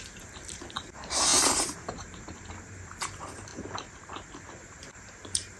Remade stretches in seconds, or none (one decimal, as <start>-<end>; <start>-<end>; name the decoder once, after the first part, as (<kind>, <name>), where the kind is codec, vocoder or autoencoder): 0.0-3.5 (vocoder, BigVGAN v2); 4.4-5.6